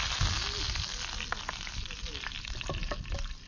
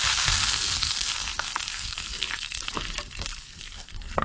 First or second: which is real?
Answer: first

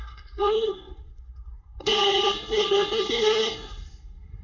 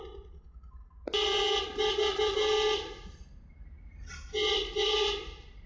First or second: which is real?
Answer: second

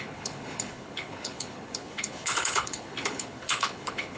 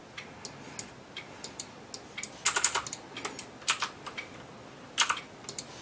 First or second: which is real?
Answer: second